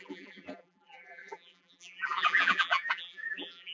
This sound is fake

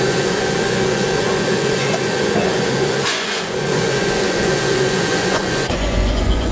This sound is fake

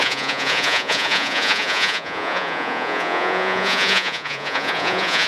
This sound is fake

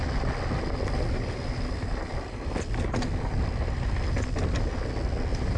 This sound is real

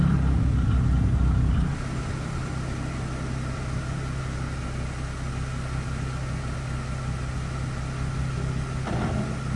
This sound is real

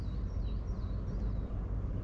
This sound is real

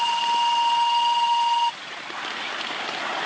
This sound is real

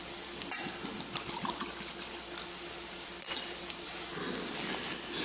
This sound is real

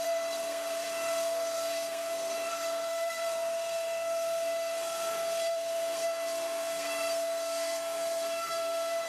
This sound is fake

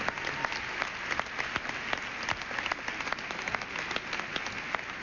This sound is real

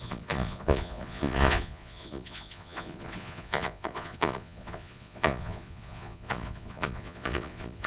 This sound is fake